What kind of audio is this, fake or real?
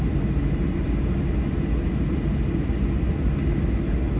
real